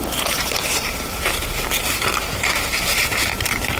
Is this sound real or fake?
fake